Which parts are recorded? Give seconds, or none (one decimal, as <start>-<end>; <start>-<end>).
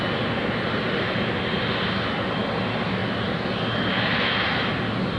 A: 0.0-5.2